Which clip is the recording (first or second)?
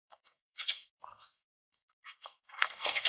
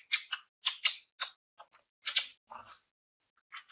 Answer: second